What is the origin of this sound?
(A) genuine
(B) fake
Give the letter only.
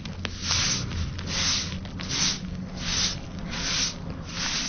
A